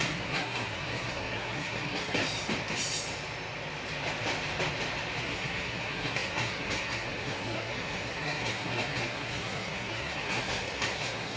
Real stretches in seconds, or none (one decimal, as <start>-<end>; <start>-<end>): 2.2-5.2